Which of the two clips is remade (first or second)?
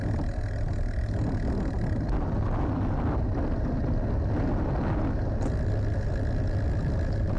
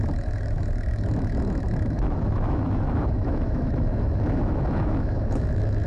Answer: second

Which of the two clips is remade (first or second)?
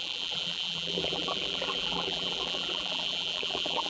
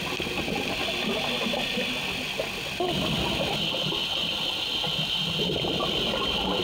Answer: first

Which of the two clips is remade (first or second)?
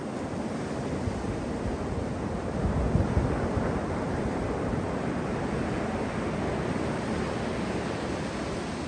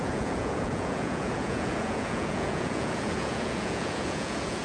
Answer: second